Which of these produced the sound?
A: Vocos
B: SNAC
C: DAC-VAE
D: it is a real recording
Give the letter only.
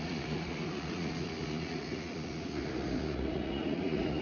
A